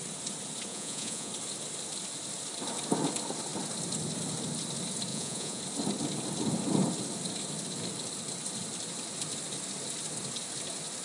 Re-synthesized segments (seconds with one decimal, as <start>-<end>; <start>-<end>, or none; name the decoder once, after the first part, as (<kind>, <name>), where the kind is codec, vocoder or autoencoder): 0.7-1.3 (vocoder, Vocos); 5.1-5.6